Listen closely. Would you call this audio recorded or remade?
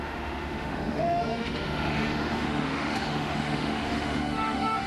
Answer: remade